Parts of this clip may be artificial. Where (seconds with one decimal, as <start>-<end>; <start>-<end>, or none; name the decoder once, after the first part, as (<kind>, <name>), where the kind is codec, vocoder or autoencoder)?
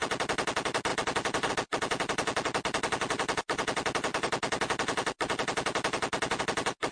none